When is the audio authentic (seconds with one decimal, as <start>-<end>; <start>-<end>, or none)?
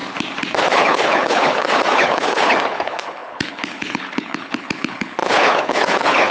0.0-0.6